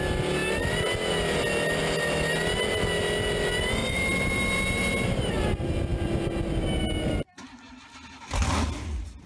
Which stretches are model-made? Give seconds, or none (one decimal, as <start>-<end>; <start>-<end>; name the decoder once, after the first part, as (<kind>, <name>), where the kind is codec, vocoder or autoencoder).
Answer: 3.8-5.3 (vocoder, BigVGAN v2)